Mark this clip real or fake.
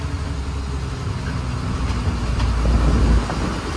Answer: real